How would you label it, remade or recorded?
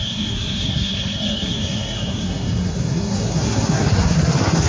remade